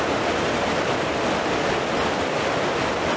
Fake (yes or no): no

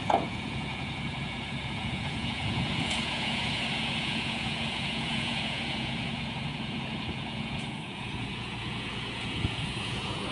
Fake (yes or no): yes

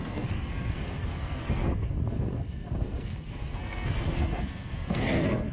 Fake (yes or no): yes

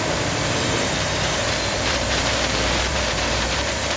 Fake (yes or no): yes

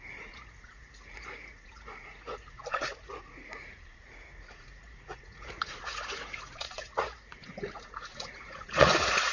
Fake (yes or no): yes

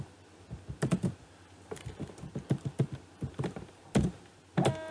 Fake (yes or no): no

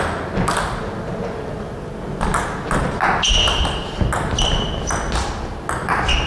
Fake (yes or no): no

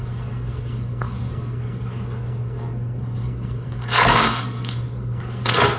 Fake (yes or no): yes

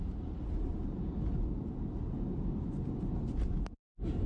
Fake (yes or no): no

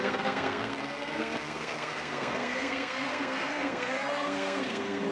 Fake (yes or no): yes